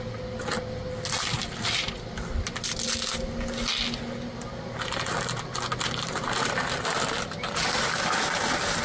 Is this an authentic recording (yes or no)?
yes